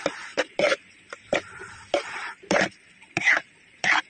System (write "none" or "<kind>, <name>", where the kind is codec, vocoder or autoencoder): vocoder, BigVGAN v2